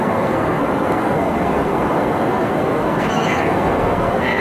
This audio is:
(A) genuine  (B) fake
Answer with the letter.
B